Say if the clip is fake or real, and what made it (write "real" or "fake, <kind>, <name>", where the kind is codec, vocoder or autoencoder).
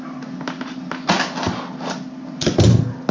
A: real